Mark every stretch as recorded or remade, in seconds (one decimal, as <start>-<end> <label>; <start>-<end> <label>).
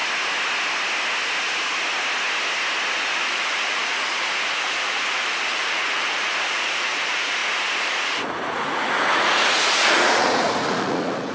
0.0-2.9 recorded; 2.9-11.3 remade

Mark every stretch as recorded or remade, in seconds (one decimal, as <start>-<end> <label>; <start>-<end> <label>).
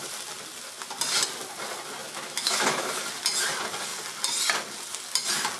0.0-2.0 recorded; 2.0-3.0 remade; 3.0-5.6 recorded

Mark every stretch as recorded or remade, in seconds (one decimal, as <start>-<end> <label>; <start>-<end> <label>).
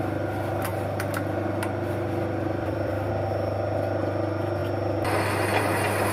0.0-0.7 recorded; 0.7-3.1 remade; 3.1-6.1 recorded